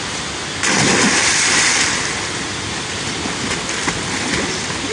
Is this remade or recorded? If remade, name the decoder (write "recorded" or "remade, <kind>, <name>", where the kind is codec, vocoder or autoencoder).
recorded